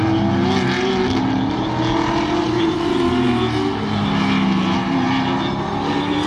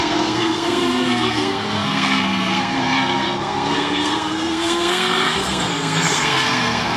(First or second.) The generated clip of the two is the second